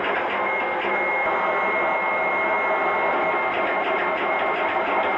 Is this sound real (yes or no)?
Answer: yes